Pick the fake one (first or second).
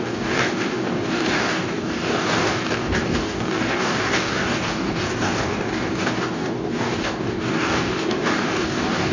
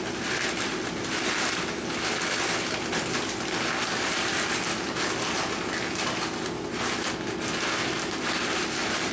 first